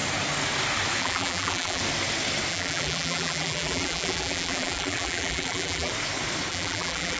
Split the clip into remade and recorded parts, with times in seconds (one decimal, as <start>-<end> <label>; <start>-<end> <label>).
0.0-1.0 recorded; 1.0-1.8 remade; 1.8-2.5 recorded; 2.5-5.9 remade; 5.9-6.5 recorded; 6.5-7.2 remade